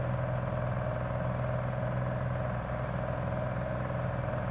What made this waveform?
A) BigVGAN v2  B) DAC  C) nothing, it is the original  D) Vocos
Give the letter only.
C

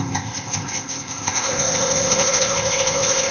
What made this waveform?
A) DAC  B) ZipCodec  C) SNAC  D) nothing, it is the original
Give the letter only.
B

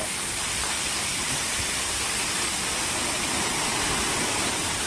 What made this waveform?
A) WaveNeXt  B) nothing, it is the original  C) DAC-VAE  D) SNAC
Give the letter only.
B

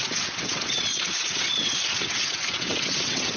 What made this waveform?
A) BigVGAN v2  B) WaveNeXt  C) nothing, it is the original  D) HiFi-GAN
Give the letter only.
B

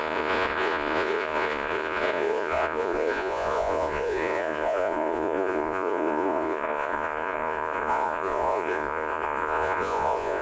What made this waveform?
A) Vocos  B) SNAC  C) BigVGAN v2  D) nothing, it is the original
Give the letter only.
A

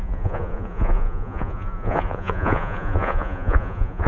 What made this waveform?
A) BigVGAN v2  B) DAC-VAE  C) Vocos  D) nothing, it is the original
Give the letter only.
C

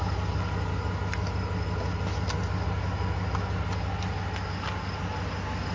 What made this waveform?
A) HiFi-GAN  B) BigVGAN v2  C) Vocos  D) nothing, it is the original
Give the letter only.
D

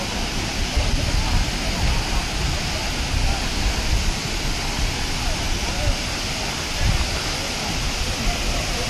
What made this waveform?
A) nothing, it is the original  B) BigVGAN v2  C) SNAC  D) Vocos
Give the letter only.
A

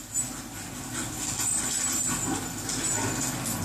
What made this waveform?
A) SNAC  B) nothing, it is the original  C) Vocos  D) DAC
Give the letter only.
B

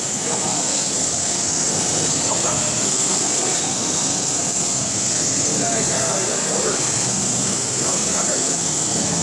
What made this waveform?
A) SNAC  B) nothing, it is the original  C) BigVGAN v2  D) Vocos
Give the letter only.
A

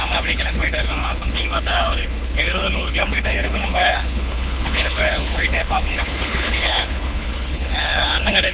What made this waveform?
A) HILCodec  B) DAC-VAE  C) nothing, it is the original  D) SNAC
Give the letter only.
A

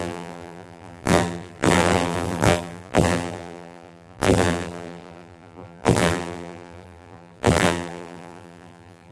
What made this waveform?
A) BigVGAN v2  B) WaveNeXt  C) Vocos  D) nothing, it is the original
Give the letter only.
A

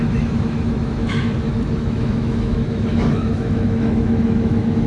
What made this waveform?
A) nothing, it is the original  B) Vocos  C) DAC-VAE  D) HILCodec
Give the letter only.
C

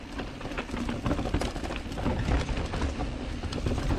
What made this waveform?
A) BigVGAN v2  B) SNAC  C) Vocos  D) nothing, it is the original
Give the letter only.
D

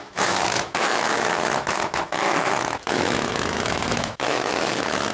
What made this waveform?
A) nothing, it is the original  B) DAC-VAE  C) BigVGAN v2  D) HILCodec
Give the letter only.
B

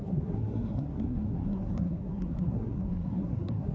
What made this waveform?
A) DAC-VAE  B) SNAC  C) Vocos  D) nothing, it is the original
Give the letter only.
B